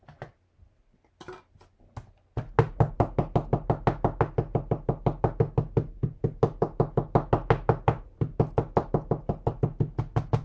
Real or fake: real